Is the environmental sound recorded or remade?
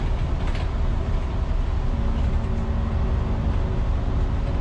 recorded